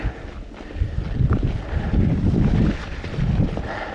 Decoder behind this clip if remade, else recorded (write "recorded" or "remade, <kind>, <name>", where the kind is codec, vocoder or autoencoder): recorded